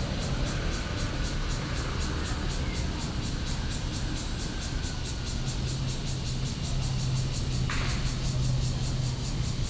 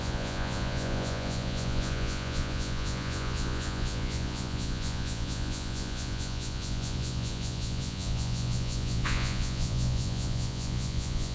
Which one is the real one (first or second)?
first